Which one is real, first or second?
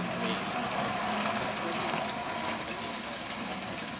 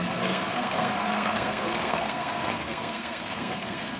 first